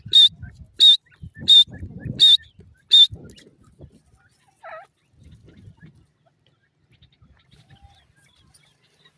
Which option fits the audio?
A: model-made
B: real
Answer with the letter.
B